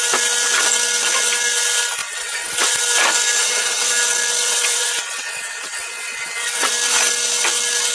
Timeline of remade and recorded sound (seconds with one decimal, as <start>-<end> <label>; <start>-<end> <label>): 0.0-2.0 recorded; 2.0-2.8 remade; 2.8-3.4 recorded; 3.4-3.9 remade; 3.9-4.4 recorded; 4.4-6.7 remade; 6.7-7.9 recorded